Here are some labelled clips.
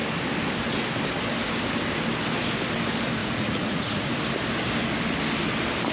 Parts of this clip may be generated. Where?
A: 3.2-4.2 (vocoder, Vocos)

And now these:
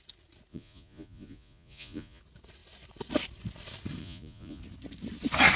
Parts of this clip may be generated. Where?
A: 0.5-2.2 (vocoder, Vocos); 4.0-4.6

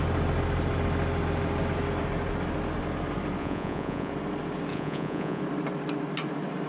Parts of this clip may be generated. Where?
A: 3.4-4.1 (vocoder, Vocos); 4.7-5.4

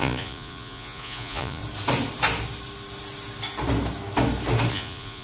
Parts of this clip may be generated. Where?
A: 0.0-1.6 (vocoder, Vocos); 4.7-5.2

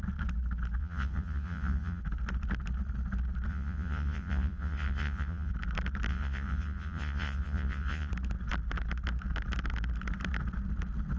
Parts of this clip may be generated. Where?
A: 0.8-2.0 (vocoder, Vocos); 3.5-5.5; 6.1-8.1

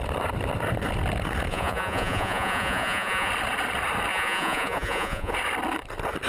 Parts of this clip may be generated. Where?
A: 1.5-3.3 (vocoder, Vocos); 4.1-5.3